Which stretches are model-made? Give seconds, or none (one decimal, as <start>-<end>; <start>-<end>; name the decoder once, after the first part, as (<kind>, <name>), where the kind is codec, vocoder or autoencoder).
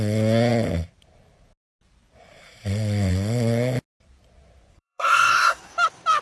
4.7-5.6 (codec, SNAC)